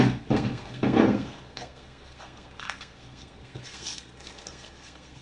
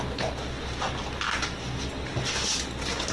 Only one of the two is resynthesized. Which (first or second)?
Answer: first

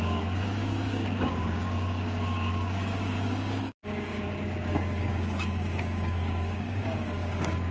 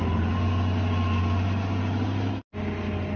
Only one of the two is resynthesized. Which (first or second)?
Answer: first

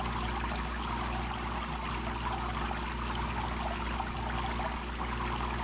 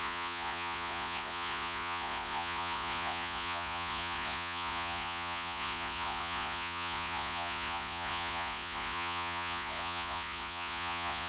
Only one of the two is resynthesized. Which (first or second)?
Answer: second